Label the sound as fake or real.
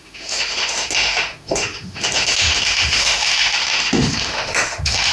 fake